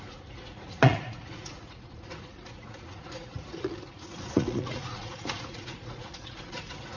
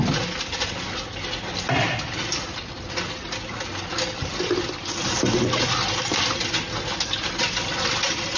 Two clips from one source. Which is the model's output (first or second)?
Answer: first